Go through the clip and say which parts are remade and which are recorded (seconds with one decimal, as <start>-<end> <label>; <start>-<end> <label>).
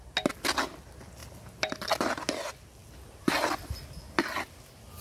0.0-5.0 recorded